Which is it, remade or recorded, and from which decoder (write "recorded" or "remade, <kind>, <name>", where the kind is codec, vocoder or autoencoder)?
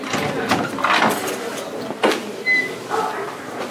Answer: recorded